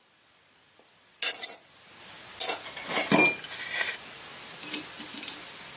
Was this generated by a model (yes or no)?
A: no